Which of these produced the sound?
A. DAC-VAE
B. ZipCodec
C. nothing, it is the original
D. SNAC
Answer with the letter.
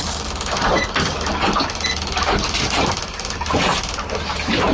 C